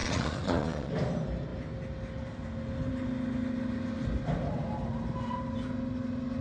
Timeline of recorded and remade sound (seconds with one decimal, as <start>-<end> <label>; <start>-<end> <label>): 0.0-0.9 remade; 0.9-6.4 recorded